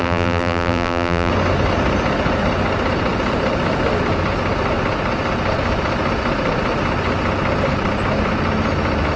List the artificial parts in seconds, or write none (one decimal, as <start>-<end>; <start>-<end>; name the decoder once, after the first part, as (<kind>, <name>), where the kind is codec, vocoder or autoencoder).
0.0-1.3 (vocoder, BigVGAN v2)